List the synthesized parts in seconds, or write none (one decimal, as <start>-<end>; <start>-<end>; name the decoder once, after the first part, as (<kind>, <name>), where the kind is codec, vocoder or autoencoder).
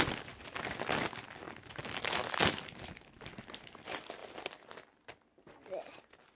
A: none